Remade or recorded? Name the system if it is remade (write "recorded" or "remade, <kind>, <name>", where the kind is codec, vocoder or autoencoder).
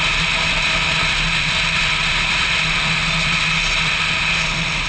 recorded